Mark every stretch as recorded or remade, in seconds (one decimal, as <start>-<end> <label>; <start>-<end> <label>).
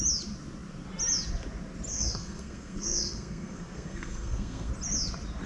0.0-1.9 recorded; 1.9-4.7 remade; 4.7-5.5 recorded